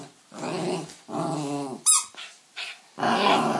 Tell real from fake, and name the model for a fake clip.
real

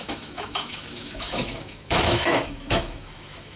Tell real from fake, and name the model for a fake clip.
fake, autoencoder, DAC-VAE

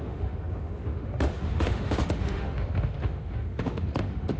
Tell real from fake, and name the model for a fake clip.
fake, autoencoder, DAC-VAE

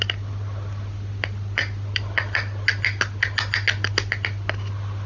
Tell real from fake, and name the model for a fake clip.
real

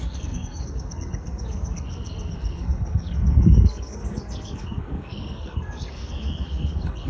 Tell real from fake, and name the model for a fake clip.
fake, codec, SNAC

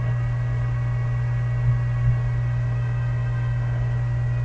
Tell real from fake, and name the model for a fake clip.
real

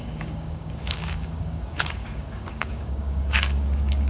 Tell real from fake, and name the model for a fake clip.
fake, codec, DAC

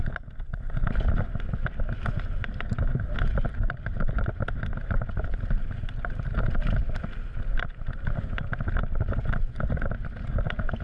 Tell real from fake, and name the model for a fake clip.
real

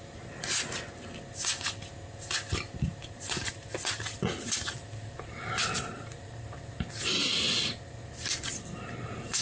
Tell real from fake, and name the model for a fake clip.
real